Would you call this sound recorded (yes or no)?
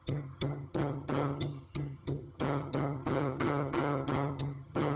no